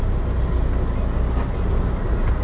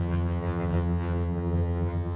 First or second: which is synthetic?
second